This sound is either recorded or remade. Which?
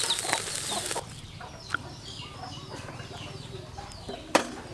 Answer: recorded